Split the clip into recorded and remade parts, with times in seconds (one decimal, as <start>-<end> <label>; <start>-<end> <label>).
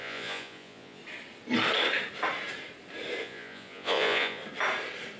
0.0-1.0 remade; 1.0-3.2 recorded; 3.2-4.4 remade; 4.4-5.2 recorded